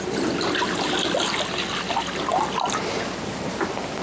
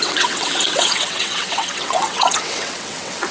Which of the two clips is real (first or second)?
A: first